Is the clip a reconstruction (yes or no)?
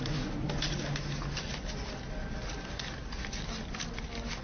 no